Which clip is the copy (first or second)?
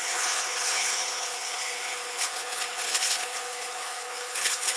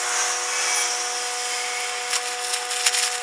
first